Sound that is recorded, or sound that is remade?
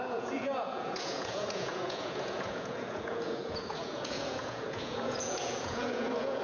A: remade